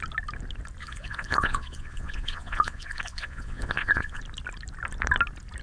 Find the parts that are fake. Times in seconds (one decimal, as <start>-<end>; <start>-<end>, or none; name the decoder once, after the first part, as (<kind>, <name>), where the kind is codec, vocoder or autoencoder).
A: 0.8-4.2 (vocoder, Vocos)